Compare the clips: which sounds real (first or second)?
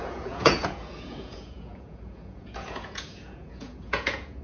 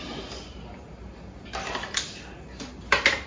second